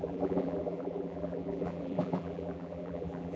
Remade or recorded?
remade